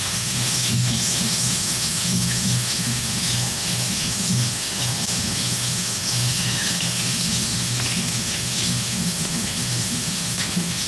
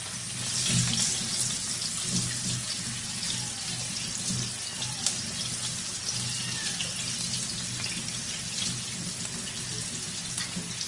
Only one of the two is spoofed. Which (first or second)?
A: first